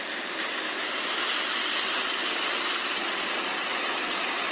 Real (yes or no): yes